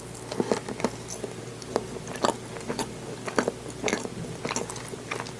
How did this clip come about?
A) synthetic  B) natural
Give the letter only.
B